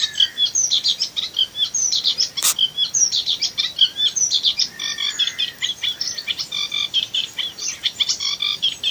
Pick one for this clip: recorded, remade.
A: recorded